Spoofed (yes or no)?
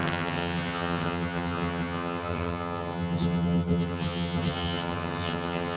yes